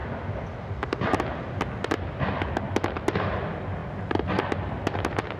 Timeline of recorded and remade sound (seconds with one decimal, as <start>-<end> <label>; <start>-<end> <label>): 0.0-5.4 recorded